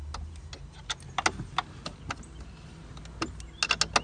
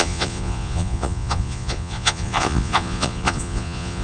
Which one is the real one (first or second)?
first